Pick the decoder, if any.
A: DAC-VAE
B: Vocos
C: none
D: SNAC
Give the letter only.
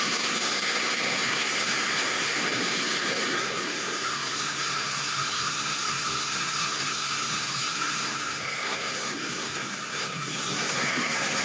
D